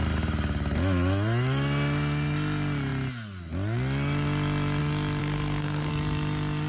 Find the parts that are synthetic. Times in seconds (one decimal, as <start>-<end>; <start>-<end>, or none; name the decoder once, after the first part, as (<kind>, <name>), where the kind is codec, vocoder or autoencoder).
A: 5.2-5.9 (codec, SNAC)